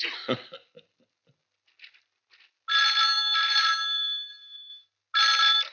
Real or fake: real